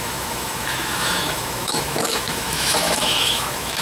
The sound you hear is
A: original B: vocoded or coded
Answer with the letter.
B